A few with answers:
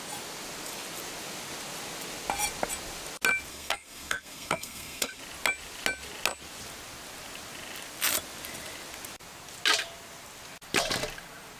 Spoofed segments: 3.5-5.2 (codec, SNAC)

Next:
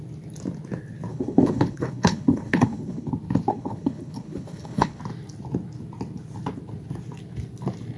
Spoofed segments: 1.1-3.1 (codec, HILCodec); 3.5-5.0

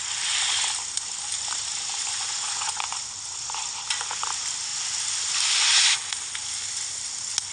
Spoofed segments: 2.1-3.0 (vocoder, Vocos)